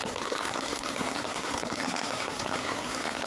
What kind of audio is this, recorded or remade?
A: remade